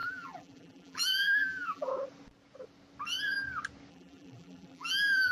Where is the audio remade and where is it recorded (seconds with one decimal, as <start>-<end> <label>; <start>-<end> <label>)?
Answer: 0.0-1.9 remade; 1.9-3.9 recorded; 3.9-5.3 remade